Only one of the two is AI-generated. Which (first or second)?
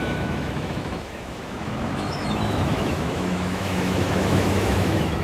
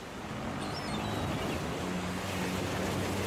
first